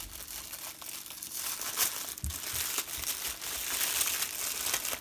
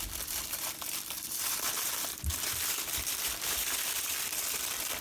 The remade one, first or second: second